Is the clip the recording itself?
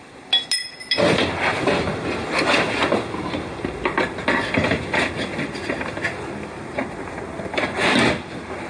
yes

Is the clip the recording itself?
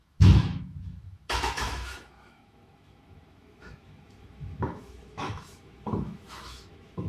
no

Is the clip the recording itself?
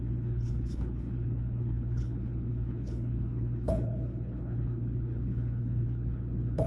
no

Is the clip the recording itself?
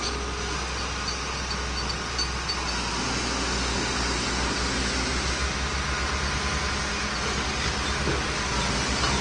yes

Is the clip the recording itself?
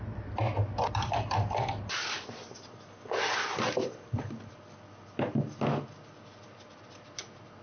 yes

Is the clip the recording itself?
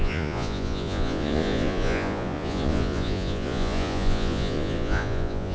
no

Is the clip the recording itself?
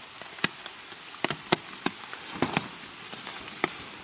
yes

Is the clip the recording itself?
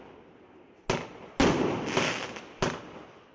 yes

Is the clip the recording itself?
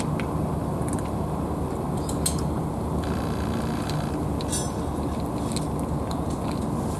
yes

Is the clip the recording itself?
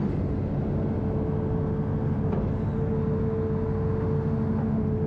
yes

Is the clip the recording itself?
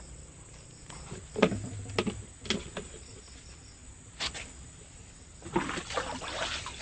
yes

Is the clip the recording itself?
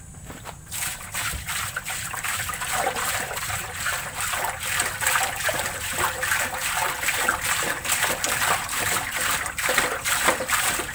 no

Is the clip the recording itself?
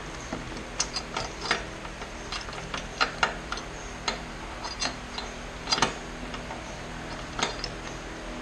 yes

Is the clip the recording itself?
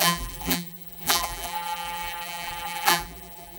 no